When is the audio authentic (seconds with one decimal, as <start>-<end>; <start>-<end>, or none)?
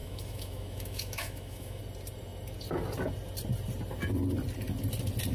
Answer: 1.8-5.3